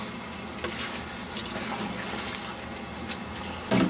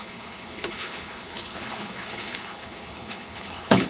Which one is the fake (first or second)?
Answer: second